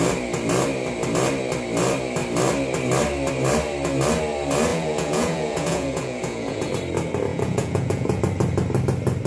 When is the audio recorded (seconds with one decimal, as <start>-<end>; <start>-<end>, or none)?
0.0-4.7; 6.7-7.3; 8.2-9.3

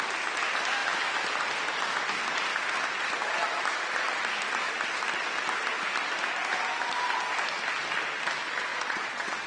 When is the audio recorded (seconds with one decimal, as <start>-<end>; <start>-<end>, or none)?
0.0-8.7

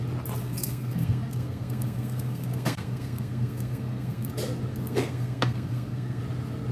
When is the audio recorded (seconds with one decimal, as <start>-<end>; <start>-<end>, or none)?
0.0-0.4; 4.3-4.7; 6.2-6.7